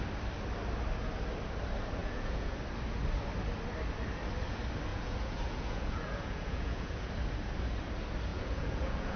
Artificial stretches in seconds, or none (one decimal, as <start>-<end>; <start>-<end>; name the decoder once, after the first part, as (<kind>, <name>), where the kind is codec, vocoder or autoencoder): 2.0-2.6 (vocoder, Vocos); 4.9-7.1; 8.3-9.2